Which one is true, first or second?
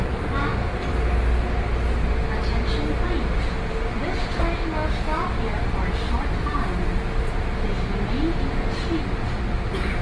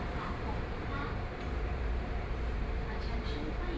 first